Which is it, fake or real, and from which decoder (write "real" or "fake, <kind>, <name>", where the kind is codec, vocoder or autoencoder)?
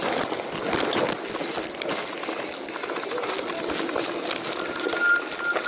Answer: real